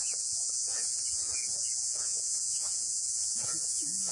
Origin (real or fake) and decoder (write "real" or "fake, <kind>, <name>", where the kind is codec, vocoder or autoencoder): fake, vocoder, Vocos